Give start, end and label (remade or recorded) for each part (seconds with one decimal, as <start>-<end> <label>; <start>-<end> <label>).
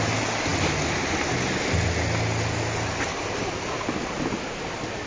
0.0-5.1 recorded